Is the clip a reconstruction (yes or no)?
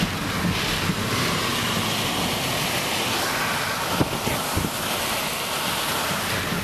no